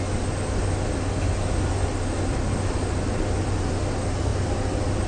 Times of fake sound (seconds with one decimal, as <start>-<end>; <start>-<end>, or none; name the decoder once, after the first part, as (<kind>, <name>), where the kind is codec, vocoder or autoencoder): none